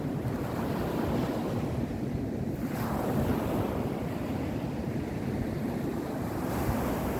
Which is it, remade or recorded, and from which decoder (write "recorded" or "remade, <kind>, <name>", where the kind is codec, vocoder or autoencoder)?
remade, vocoder, BigVGAN v2